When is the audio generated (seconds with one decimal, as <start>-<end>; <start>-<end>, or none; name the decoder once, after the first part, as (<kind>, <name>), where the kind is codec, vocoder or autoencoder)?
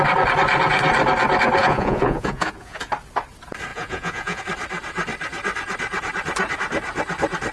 1.6-2.9 (vocoder, Vocos); 3.7-4.4